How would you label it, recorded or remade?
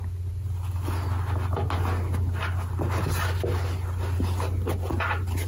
recorded